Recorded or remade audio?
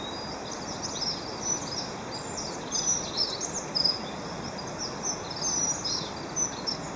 recorded